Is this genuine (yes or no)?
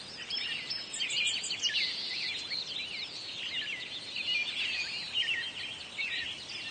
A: yes